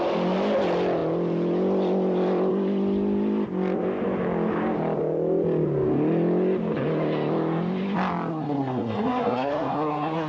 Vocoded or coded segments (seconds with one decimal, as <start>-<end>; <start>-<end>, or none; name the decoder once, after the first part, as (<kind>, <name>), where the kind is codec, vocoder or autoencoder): 8.3-10.3 (codec, SNAC)